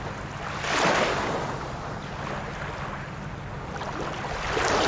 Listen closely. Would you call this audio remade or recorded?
recorded